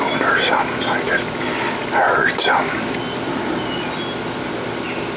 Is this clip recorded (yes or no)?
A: yes